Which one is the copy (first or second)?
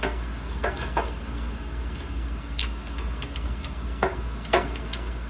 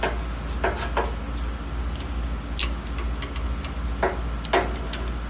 first